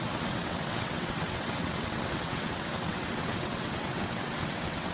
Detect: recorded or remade remade